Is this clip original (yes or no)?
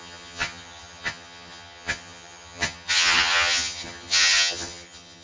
no